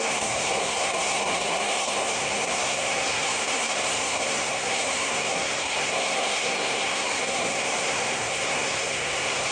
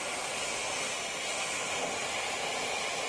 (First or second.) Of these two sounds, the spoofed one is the first